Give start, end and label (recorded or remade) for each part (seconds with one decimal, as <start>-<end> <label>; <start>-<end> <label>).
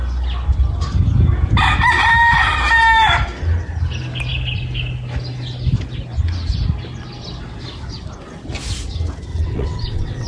0.0-9.3 recorded; 9.3-10.3 remade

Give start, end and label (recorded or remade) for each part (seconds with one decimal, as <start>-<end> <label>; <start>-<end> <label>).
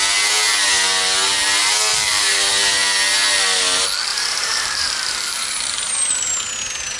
0.0-1.9 recorded; 1.9-2.5 remade; 2.5-4.1 recorded; 4.1-6.1 remade; 6.1-7.0 recorded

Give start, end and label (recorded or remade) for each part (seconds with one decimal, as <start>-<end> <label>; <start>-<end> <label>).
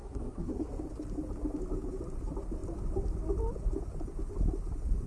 0.0-0.8 remade; 0.8-5.1 recorded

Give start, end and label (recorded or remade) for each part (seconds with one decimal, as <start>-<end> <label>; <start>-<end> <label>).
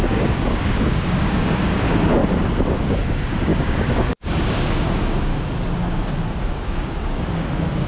0.0-2.2 remade; 2.2-2.9 recorded; 2.9-5.3 remade; 5.3-6.5 recorded; 6.5-7.9 remade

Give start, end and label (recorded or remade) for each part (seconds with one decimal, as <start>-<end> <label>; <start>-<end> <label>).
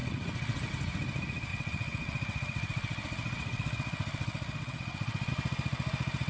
0.0-0.7 remade; 0.7-1.5 recorded; 1.5-5.3 remade; 5.3-6.3 recorded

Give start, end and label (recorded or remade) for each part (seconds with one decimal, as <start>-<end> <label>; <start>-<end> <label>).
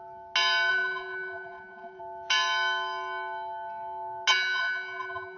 0.0-0.7 recorded; 0.7-2.0 remade; 2.0-4.3 recorded; 4.3-5.4 remade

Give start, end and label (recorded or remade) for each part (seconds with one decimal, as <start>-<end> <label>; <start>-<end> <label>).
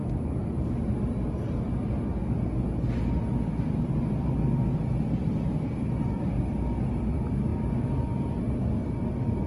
0.0-9.5 recorded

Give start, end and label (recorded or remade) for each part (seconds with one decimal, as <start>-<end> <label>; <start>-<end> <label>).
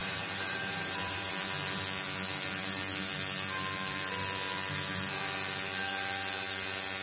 0.0-1.3 remade; 1.3-7.0 recorded